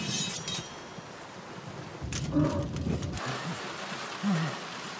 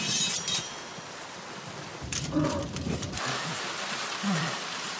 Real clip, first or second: first